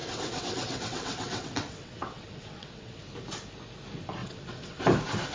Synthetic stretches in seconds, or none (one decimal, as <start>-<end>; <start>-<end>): 0.0-3.0; 4.2-4.8